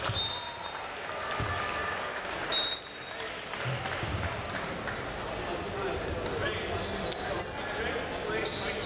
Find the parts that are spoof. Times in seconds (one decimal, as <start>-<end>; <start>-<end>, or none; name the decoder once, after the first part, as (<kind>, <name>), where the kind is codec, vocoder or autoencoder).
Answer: 1.8-2.3 (codec, DAC)